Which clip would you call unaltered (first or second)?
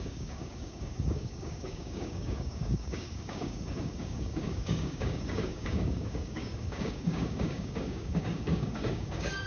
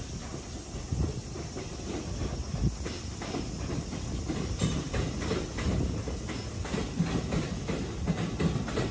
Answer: second